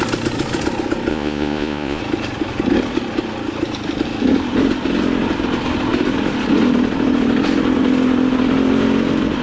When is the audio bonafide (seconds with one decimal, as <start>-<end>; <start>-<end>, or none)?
0.0-1.1; 2.0-9.4